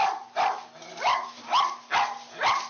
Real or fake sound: real